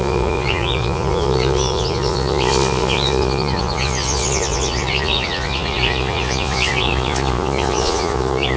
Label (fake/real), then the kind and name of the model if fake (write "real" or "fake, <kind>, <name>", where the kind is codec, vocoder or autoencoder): fake, vocoder, Vocos